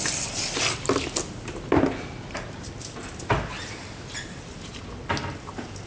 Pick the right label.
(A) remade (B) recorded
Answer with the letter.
B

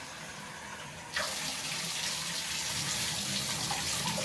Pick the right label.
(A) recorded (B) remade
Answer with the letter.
A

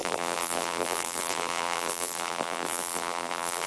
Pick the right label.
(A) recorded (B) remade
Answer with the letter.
B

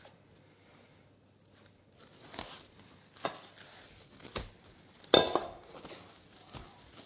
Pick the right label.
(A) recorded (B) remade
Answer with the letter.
A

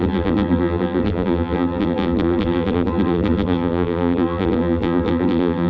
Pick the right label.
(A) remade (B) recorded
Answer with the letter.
A